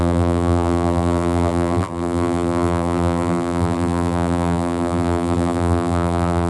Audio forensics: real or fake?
fake